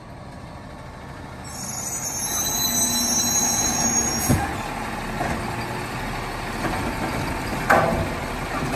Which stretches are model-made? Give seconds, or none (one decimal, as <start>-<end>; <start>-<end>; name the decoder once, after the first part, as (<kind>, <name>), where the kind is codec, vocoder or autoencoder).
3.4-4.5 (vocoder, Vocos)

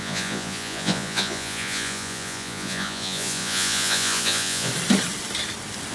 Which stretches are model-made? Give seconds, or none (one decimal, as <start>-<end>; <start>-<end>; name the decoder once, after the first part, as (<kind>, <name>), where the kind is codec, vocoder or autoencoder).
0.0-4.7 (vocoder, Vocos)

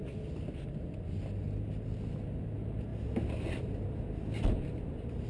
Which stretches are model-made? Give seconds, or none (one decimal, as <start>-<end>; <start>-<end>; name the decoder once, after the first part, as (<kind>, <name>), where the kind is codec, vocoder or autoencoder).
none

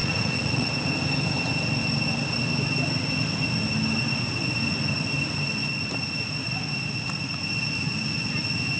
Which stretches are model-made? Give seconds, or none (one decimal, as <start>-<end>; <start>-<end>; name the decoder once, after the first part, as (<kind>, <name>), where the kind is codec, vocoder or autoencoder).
0.0-0.7 (vocoder, Vocos)

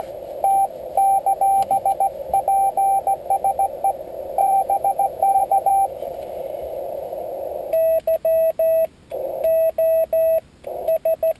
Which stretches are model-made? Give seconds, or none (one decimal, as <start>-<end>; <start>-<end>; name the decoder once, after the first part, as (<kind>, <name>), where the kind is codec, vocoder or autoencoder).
4.4-5.7 (vocoder, Vocos)

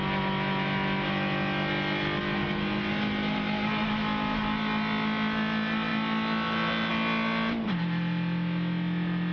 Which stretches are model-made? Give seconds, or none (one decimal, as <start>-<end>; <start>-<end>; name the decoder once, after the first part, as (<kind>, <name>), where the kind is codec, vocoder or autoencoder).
none